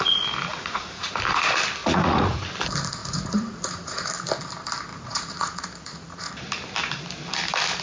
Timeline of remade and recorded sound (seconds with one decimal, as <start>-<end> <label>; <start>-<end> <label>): 0.0-0.5 recorded; 0.5-1.1 remade; 1.1-1.8 recorded; 1.8-2.4 remade; 2.4-3.0 recorded; 3.0-4.1 remade; 4.1-4.9 recorded; 4.9-6.3 remade; 6.3-7.8 recorded